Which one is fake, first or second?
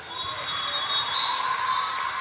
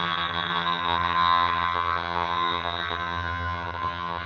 second